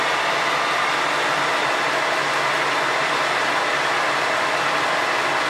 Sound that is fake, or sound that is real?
real